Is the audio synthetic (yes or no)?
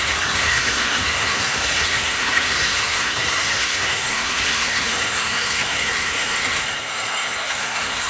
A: yes